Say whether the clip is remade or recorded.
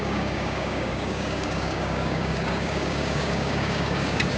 remade